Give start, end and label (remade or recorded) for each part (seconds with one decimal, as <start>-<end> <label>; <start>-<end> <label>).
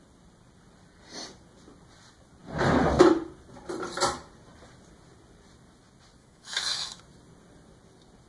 0.0-6.2 recorded; 6.2-7.0 remade; 7.0-8.3 recorded